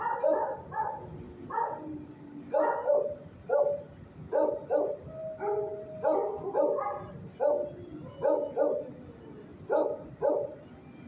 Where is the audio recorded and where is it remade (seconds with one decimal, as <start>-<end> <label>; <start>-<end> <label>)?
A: 0.0-11.1 recorded